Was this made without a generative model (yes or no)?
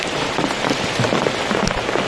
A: yes